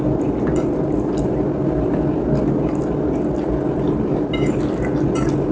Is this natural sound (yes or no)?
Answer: yes